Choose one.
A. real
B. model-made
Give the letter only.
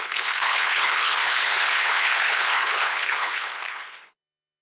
B